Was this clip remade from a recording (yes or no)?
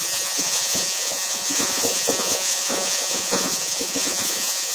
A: yes